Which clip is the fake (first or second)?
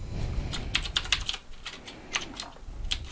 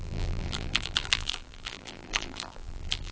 second